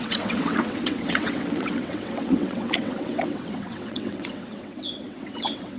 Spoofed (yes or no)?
yes